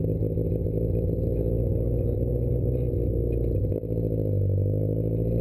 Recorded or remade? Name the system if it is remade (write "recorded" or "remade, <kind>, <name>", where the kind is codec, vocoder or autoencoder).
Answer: recorded